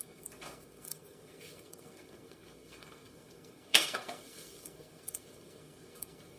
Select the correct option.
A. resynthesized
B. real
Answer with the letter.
A